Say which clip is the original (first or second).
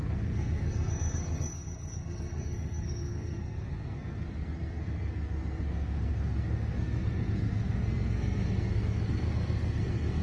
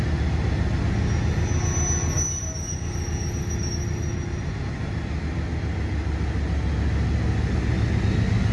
second